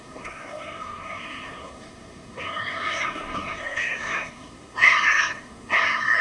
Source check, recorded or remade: remade